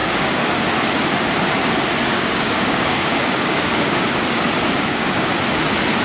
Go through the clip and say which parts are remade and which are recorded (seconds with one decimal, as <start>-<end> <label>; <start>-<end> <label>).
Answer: 0.0-0.5 remade; 0.5-2.1 recorded; 2.1-5.3 remade; 5.3-6.0 recorded

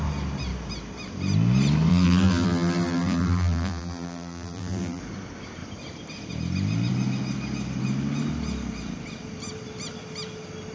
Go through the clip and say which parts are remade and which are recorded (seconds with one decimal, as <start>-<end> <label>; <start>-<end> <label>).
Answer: 0.0-1.9 recorded; 1.9-5.0 remade; 5.0-10.7 recorded

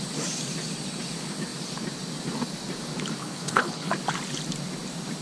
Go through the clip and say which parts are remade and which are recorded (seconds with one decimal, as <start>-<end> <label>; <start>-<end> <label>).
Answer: 0.0-3.2 recorded; 3.2-3.9 remade; 3.9-5.2 recorded

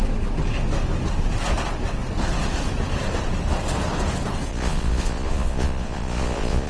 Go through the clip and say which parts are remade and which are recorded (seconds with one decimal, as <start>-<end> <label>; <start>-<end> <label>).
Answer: 0.0-4.5 recorded; 4.5-6.7 remade